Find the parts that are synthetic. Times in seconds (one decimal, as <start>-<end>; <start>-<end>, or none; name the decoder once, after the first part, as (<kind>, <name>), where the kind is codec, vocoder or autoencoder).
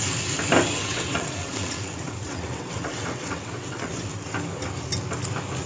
0.8-4.1 (vocoder, WaveNeXt)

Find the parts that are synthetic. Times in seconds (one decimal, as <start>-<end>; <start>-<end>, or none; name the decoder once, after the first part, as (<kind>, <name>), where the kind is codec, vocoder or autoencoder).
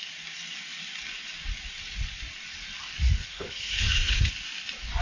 3.2-4.3 (codec, HILCodec)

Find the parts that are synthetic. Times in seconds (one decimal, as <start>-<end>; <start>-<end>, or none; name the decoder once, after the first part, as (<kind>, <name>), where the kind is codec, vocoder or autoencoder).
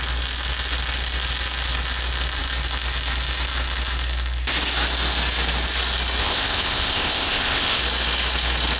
6.2-7.8 (codec, ZipCodec)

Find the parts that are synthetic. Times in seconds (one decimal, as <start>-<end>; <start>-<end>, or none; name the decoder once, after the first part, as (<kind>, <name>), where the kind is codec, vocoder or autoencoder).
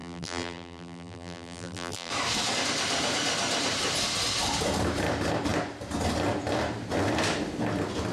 0.0-2.1 (vocoder, BigVGAN v2)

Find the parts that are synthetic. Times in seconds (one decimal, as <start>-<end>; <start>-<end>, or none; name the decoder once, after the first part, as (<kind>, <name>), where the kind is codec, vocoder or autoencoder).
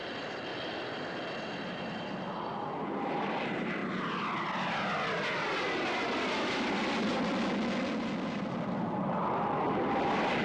0.0-0.5 (vocoder, BigVGAN v2); 2.9-3.8; 6.3-7.3; 7.9-10.4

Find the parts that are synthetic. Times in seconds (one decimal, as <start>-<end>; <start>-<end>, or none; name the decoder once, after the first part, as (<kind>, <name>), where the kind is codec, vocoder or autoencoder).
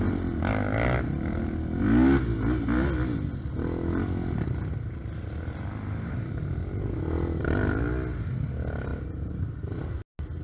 8.9-9.5 (vocoder, BigVGAN v2)